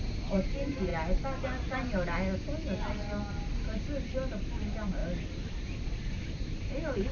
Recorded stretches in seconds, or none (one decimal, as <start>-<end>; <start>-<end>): 0.9-3.6; 5.0-6.2